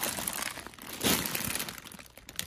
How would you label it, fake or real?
real